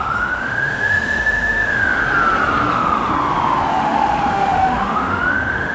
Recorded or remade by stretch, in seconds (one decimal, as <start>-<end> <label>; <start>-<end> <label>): 0.0-2.0 remade; 2.0-2.7 recorded; 2.7-3.1 remade; 3.1-3.8 recorded; 3.8-5.7 remade